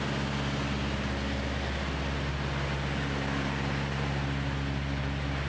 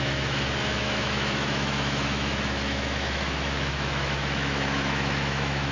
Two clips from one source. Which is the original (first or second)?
first